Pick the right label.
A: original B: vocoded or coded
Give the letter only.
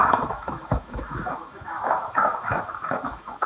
B